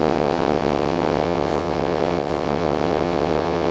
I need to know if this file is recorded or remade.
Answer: remade